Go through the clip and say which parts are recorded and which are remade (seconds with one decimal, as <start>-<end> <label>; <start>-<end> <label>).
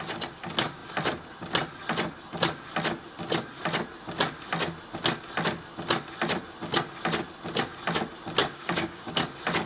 0.0-8.4 recorded; 8.4-9.1 remade; 9.1-9.7 recorded